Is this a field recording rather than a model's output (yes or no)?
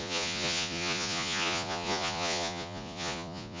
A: no